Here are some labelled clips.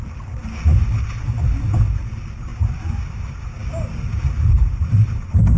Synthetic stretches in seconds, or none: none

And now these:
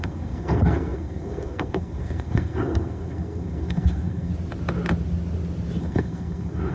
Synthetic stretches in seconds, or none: 0.0-4.3 (codec, SNAC); 5.8-6.7

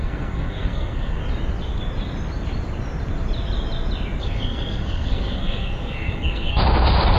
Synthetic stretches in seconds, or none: 0.0-1.2 (codec, SNAC); 4.2-6.6

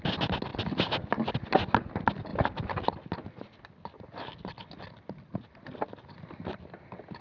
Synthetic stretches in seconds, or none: none

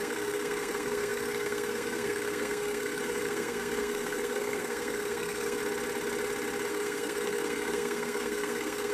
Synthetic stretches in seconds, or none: 0.0-5.6 (codec, SNAC); 6.7-8.9

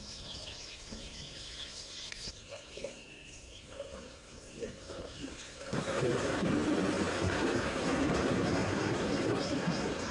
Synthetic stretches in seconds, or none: 0.0-6.5 (codec, SNAC); 7.1-10.1

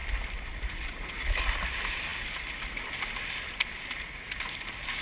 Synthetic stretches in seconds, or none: none